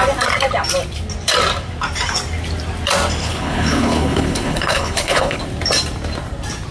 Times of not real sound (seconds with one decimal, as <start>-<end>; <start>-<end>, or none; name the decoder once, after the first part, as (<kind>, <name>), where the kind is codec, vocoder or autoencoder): 3.2-5.4 (codec, HILCodec)